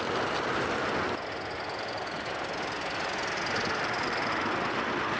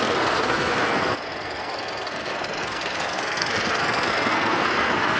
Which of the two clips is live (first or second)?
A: first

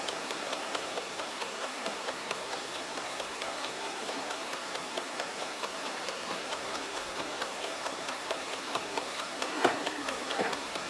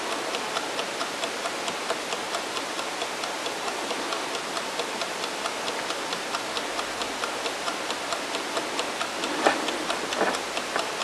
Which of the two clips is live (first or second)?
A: second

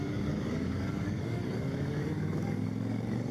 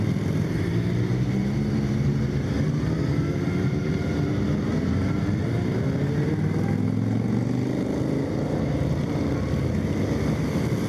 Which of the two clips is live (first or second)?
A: second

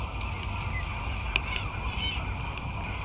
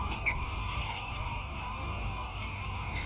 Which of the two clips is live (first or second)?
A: first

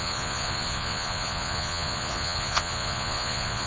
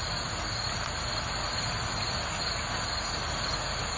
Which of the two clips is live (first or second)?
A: second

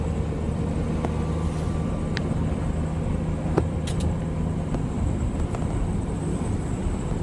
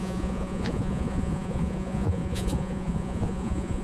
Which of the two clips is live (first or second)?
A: first